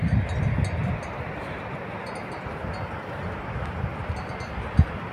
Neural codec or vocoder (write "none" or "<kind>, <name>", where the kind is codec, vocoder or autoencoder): none